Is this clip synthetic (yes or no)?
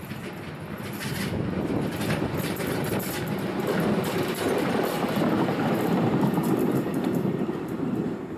no